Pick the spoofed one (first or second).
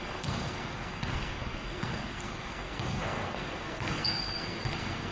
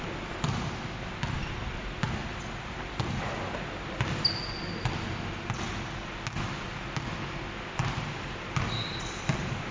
first